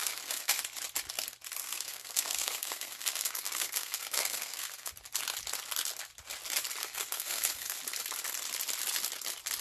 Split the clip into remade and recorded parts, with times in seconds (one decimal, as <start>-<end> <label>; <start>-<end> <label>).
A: 0.0-0.6 remade; 0.6-1.6 recorded; 1.6-4.9 remade; 4.9-6.8 recorded; 6.8-7.8 remade; 7.8-9.6 recorded